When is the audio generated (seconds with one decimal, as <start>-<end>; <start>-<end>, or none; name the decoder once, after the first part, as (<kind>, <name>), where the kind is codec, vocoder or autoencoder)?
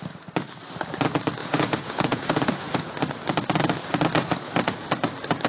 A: 1.4-3.0 (vocoder, Vocos)